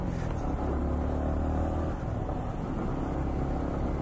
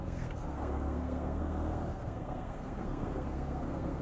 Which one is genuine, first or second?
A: first